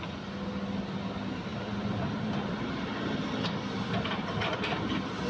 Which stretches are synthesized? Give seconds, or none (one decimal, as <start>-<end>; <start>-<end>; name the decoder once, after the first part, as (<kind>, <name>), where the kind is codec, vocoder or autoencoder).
1.5-4.7 (vocoder, BigVGAN v2)